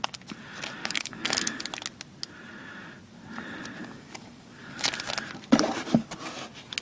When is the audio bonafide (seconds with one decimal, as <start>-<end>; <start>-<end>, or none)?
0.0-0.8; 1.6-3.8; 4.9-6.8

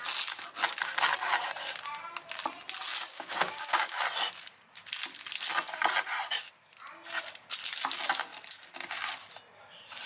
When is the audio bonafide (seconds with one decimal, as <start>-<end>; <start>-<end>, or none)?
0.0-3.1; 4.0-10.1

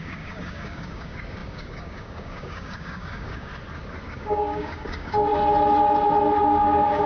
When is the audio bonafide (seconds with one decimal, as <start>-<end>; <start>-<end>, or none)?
3.5-4.1; 5.3-6.4

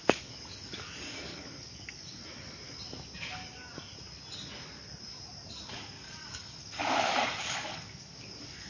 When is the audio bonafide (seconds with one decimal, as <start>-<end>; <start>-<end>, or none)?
2.2-5.7